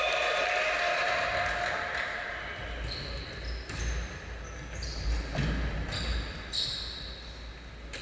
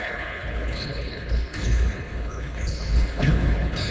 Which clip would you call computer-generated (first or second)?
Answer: second